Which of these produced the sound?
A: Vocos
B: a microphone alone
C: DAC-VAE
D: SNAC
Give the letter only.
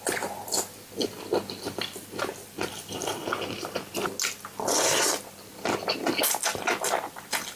B